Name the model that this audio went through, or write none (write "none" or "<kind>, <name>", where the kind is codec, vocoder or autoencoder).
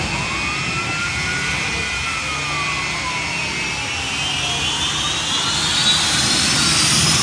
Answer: none